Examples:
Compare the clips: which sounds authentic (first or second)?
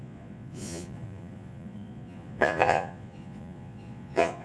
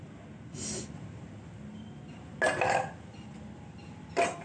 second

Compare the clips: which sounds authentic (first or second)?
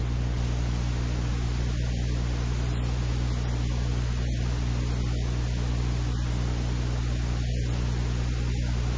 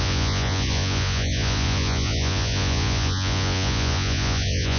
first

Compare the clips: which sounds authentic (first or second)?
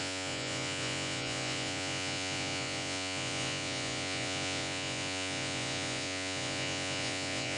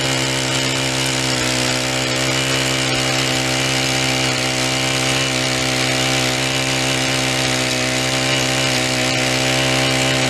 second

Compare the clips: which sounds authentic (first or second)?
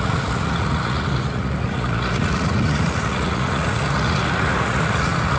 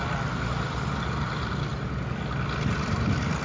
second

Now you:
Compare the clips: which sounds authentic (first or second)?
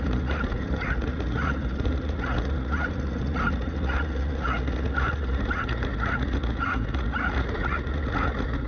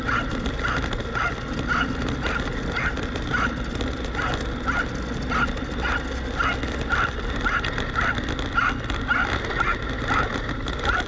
second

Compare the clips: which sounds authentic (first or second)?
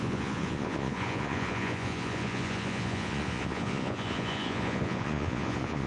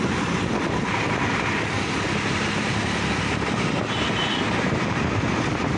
second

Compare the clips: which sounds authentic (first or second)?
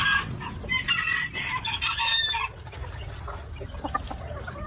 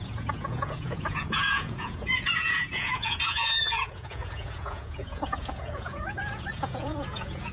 first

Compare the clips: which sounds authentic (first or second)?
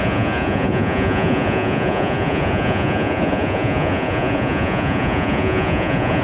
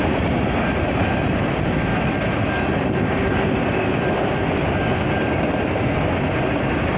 second